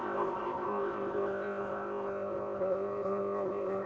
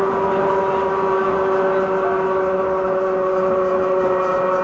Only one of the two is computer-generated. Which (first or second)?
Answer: first